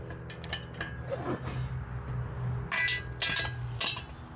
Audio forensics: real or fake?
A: real